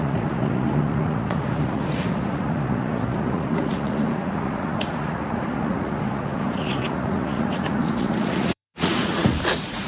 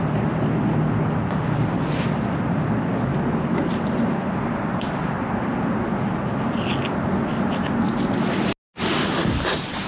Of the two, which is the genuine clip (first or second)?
second